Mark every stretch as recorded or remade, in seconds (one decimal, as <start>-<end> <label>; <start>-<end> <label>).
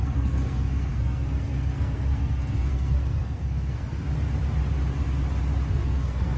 0.0-4.0 remade; 4.0-5.7 recorded; 5.7-6.4 remade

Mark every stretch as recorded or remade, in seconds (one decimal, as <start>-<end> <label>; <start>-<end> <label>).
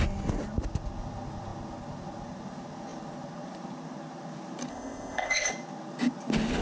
0.0-4.7 recorded; 4.7-5.5 remade; 5.5-6.6 recorded